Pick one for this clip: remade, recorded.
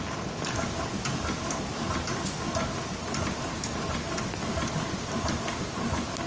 recorded